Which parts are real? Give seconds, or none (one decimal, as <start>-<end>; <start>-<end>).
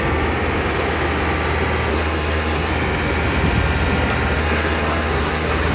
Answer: 0.0-1.9; 2.7-4.4